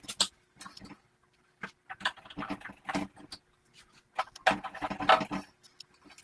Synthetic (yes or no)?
no